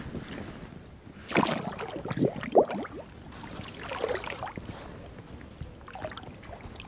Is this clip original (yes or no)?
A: yes